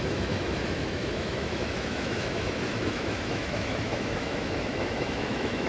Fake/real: fake